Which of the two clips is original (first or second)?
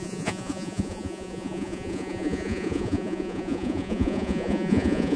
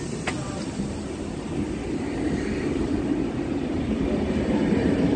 second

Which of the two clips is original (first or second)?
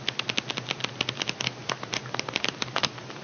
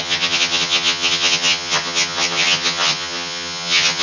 first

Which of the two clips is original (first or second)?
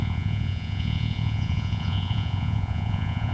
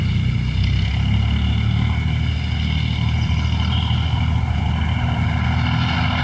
second